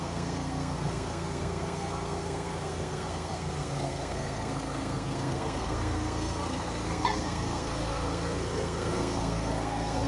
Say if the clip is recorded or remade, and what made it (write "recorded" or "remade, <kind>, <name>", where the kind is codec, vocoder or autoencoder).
remade, codec, SNAC